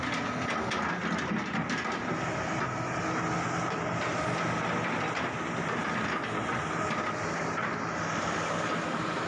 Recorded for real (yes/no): yes